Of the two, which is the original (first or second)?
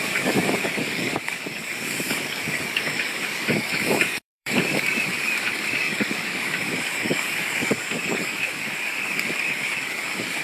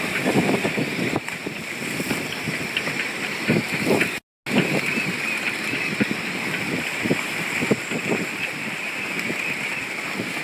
second